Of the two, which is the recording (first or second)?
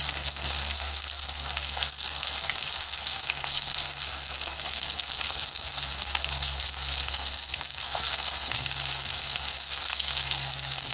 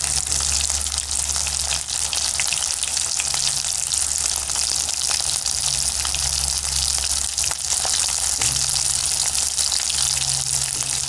second